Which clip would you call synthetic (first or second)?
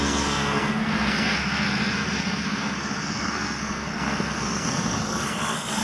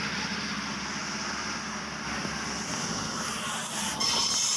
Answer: first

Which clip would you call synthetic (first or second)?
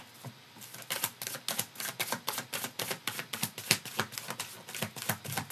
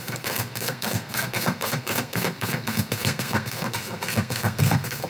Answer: second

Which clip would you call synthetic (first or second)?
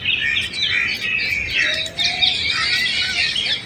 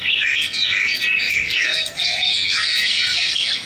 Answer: second